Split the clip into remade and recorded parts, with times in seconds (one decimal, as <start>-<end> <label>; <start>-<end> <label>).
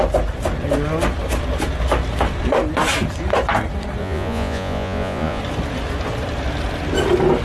0.0-4.0 recorded; 4.0-5.4 remade; 5.4-7.4 recorded